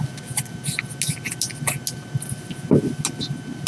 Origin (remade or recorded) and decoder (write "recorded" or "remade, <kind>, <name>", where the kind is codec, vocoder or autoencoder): recorded